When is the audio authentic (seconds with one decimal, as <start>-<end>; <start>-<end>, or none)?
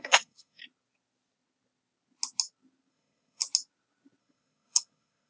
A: 0.6-2.9; 3.4-4.2